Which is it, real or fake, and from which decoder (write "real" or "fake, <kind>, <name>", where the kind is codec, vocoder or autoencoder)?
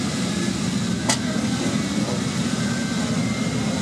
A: real